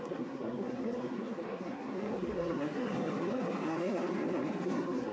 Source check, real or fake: fake